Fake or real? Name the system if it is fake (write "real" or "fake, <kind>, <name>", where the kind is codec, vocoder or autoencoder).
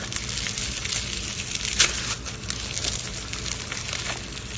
real